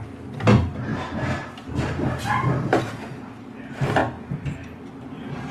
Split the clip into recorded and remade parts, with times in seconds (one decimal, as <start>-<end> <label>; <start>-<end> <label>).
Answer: 0.0-5.5 recorded